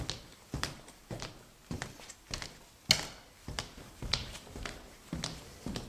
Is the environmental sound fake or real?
real